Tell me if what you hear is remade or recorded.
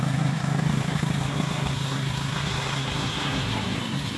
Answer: remade